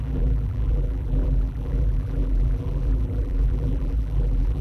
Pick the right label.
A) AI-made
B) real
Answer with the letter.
A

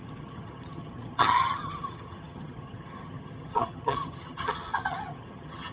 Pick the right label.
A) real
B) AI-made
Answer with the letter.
B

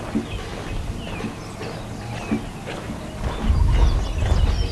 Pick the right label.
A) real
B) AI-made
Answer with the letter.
A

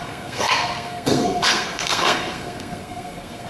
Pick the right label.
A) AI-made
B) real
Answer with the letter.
A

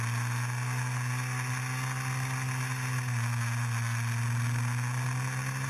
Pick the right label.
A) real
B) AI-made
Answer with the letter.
A